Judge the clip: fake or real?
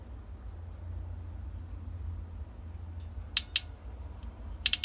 real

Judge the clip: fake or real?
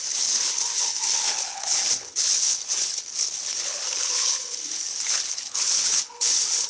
fake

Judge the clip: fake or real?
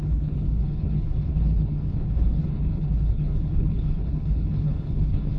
fake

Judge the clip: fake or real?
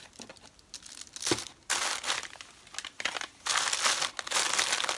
real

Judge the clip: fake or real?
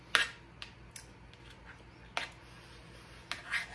real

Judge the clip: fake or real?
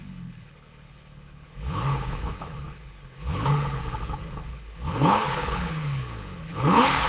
fake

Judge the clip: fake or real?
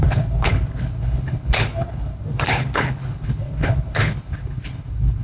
fake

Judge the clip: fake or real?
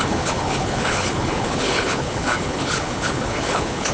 fake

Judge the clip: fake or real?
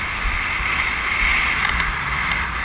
real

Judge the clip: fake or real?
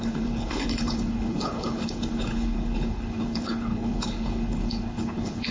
fake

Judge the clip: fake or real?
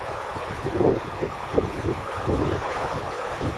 fake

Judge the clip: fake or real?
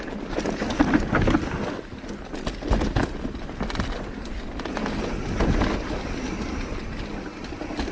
real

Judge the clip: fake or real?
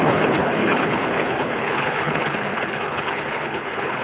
fake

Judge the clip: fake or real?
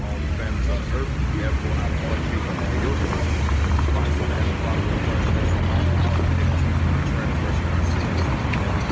real